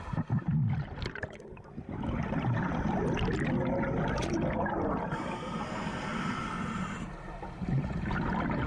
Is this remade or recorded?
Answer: recorded